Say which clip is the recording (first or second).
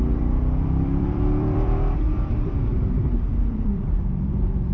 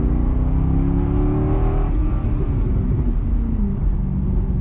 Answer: second